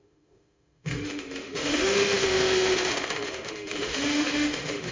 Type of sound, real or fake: fake